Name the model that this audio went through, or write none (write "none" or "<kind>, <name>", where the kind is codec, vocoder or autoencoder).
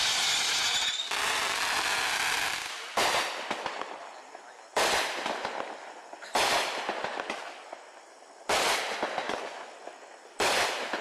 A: none